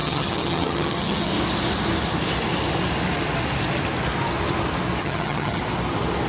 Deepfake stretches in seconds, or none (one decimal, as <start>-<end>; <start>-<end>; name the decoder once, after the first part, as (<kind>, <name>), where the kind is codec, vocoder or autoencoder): 0.0-1.3 (vocoder, HiFi-GAN); 5.0-5.6